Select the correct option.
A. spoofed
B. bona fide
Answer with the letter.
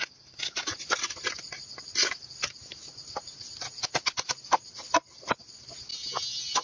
B